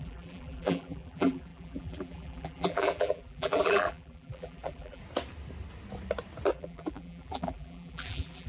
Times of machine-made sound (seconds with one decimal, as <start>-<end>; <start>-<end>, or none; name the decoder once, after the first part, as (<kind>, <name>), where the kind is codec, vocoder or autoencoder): 0.0-5.0 (vocoder, BigVGAN v2); 6.5-8.5